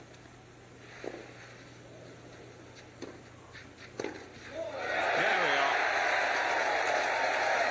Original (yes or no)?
yes